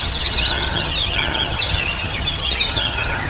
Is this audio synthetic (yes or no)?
yes